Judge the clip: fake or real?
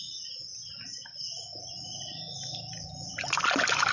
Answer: real